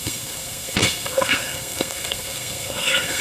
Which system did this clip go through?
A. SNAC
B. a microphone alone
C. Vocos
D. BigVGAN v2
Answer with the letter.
A